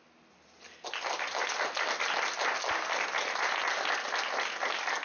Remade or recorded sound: recorded